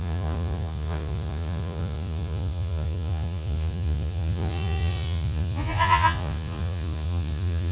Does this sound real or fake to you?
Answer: fake